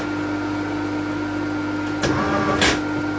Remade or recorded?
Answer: recorded